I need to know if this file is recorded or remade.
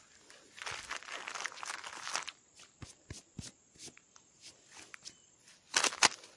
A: recorded